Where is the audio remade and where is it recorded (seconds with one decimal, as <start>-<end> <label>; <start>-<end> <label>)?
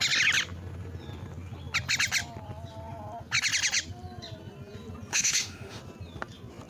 0.0-5.1 recorded; 5.1-5.8 remade; 5.8-6.7 recorded